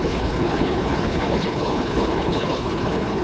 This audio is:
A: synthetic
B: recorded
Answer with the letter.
A